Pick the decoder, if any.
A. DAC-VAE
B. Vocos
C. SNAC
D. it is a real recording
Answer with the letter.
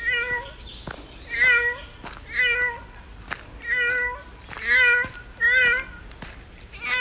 D